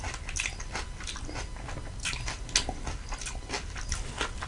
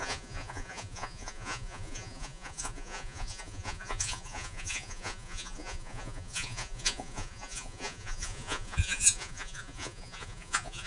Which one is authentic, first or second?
first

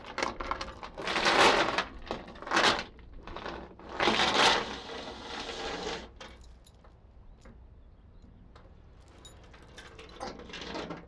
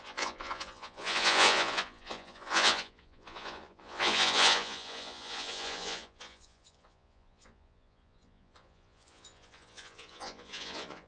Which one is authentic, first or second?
first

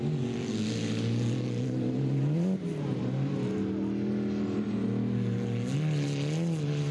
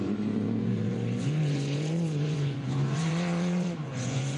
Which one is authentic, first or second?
first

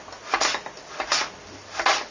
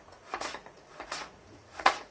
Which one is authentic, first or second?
first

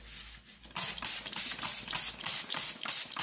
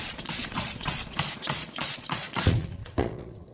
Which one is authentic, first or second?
first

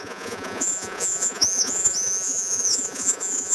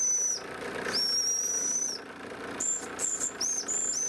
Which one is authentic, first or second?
second